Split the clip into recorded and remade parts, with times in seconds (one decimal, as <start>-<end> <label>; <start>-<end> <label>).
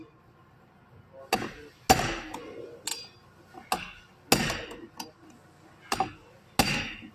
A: 0.0-7.1 recorded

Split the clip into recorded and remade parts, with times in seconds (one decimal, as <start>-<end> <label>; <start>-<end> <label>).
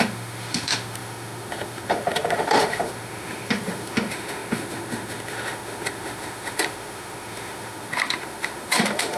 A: 0.0-9.2 remade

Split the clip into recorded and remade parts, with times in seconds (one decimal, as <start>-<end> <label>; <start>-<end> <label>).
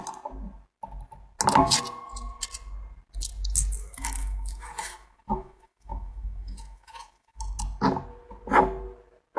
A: 0.0-3.8 recorded; 3.8-7.4 remade; 7.4-9.4 recorded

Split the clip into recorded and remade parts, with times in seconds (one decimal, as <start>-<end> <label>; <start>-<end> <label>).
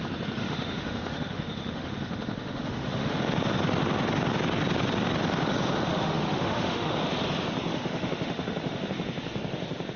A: 0.0-0.4 recorded; 0.4-3.2 remade; 3.2-5.9 recorded; 5.9-6.9 remade; 6.9-7.7 recorded; 7.7-8.9 remade; 8.9-10.0 recorded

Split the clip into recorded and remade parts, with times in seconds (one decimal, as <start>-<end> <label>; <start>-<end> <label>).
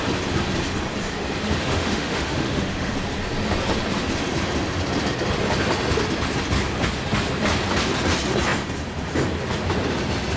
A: 0.0-1.6 recorded; 1.6-2.9 remade; 2.9-10.4 recorded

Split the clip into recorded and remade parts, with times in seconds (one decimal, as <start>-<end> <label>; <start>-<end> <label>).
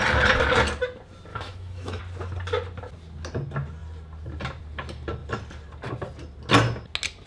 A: 0.0-1.3 recorded; 1.3-2.0 remade; 2.0-7.3 recorded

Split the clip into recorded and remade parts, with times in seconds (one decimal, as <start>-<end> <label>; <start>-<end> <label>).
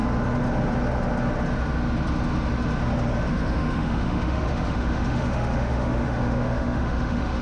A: 0.0-3.3 recorded; 3.3-7.4 remade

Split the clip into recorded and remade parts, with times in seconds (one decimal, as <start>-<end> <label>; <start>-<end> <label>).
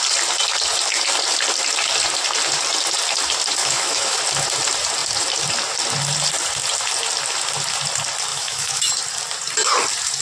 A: 0.0-3.6 recorded; 3.6-4.2 remade; 4.2-8.3 recorded; 8.3-8.9 remade; 8.9-10.2 recorded